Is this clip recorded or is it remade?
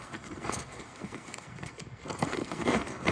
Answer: remade